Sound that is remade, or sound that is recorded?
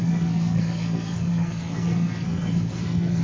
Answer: remade